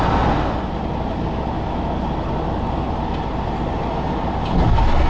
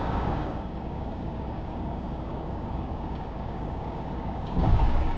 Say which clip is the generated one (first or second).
second